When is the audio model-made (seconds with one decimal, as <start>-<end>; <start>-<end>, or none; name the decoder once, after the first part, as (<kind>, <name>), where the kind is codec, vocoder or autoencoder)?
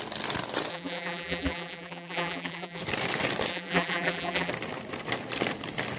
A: 0.7-2.8 (vocoder, BigVGAN v2); 3.5-4.5